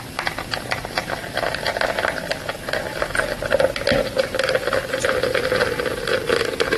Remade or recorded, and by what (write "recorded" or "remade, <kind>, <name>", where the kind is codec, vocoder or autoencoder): recorded